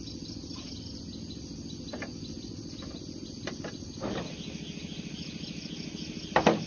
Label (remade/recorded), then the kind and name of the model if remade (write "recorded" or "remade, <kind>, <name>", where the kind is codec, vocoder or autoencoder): recorded